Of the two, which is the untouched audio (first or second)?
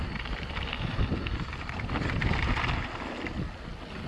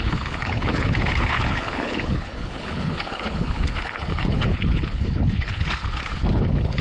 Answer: first